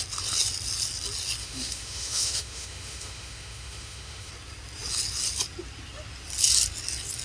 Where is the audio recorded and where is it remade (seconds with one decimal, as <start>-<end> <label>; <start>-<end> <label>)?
0.0-1.4 recorded; 1.4-4.3 remade; 4.3-7.2 recorded